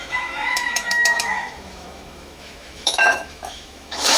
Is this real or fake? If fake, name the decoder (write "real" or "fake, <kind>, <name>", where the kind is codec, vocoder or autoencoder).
fake, autoencoder, DAC-VAE